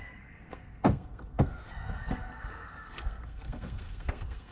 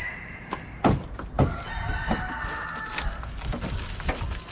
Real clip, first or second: second